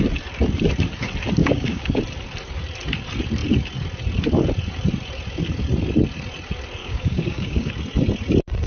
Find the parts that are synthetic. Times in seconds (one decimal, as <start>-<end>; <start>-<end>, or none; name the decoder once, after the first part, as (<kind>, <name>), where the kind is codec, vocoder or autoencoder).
1.4-2.0 (codec, DAC); 6.8-7.7

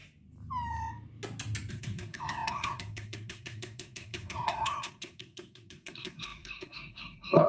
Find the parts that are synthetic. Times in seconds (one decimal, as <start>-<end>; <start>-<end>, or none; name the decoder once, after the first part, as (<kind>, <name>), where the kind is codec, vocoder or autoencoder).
1.7-7.5 (codec, SNAC)